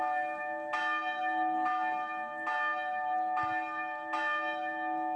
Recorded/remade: recorded